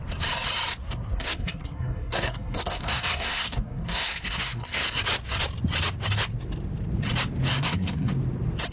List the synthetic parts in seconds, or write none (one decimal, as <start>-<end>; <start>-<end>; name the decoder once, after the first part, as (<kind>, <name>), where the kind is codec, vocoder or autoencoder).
0.8-5.0 (codec, SNAC); 7.5-8.1